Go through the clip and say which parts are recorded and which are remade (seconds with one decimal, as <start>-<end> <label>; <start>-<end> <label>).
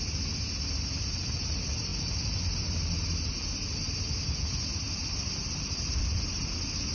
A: 0.0-6.9 recorded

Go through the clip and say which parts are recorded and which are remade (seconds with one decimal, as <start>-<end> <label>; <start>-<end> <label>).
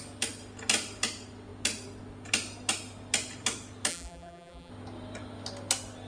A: 0.0-3.9 recorded; 3.9-4.7 remade; 4.7-6.1 recorded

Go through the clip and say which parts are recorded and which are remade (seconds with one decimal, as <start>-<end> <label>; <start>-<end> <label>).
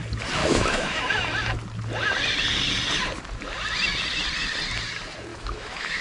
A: 0.0-0.4 recorded; 0.4-1.1 remade; 1.1-5.3 recorded; 5.3-6.0 remade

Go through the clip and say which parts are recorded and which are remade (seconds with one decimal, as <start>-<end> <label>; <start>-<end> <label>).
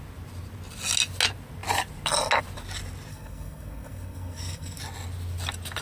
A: 0.0-3.1 recorded; 3.1-4.8 remade; 4.8-5.8 recorded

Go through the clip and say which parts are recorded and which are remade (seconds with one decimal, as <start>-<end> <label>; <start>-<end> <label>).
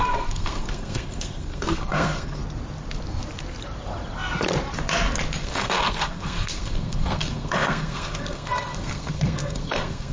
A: 0.0-2.4 remade; 2.4-5.4 recorded; 5.4-10.1 remade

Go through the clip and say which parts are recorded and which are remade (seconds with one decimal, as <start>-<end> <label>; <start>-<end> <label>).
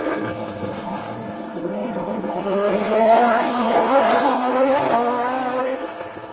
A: 0.0-4.7 remade; 4.7-5.6 recorded; 5.6-6.3 remade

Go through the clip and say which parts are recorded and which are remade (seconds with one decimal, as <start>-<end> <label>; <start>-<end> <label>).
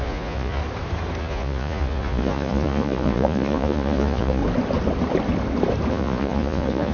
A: 0.0-0.6 remade; 0.6-1.2 recorded; 1.2-4.4 remade; 4.4-5.9 recorded; 5.9-6.9 remade